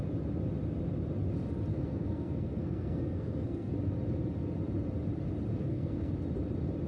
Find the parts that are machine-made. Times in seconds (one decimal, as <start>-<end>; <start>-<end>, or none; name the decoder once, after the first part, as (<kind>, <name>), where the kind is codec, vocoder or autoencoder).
1.7-3.7 (codec, SNAC); 5.5-6.1